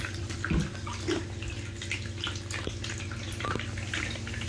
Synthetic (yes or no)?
no